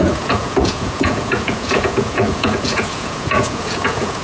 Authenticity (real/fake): fake